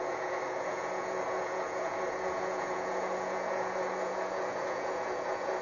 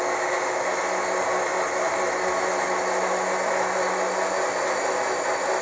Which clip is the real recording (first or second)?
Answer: second